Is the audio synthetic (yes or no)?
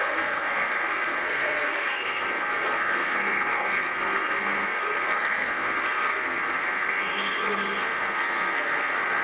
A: yes